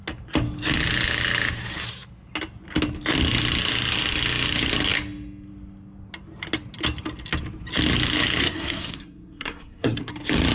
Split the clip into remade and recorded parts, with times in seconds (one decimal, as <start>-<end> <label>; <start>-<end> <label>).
0.0-8.4 recorded; 8.4-10.1 remade; 10.1-10.5 recorded